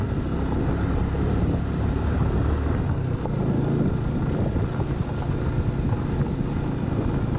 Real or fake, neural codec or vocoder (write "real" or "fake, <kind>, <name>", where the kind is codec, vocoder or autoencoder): real